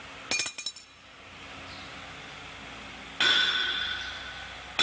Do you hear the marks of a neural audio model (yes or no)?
no